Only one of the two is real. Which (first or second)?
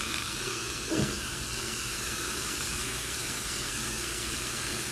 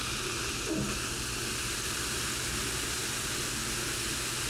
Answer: second